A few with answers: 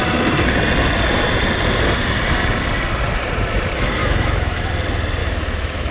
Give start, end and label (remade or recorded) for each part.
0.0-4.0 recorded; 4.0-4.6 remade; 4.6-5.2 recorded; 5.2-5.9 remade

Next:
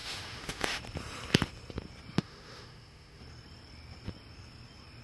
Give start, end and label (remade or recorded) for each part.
0.0-0.8 remade; 0.8-2.2 recorded; 2.2-3.2 remade; 3.2-5.0 recorded

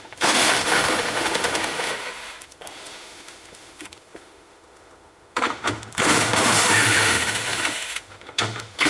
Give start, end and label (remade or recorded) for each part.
0.0-8.9 remade